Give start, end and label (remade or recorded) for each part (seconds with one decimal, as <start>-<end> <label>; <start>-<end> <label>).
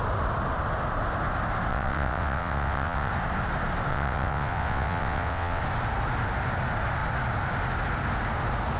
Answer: 0.0-1.7 recorded; 1.7-3.1 remade; 3.1-3.9 recorded; 3.9-5.6 remade; 5.6-8.8 recorded